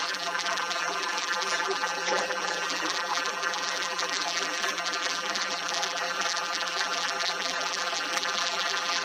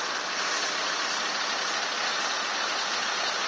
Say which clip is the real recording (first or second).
second